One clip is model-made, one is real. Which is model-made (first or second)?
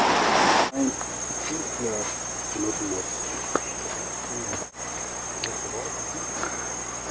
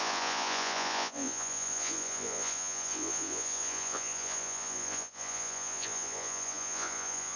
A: second